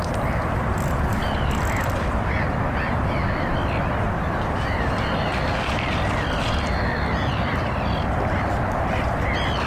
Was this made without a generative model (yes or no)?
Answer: yes